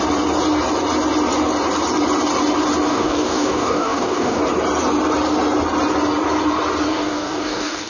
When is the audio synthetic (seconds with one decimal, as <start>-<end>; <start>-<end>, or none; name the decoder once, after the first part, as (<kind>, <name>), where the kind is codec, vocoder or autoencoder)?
2.9-4.4 (codec, DAC); 6.9-7.9